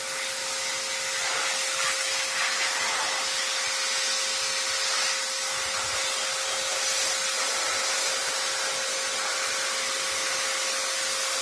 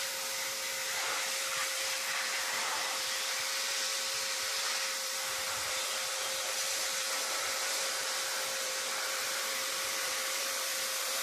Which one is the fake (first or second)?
second